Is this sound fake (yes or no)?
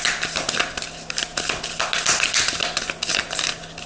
no